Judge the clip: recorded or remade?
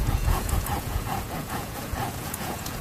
remade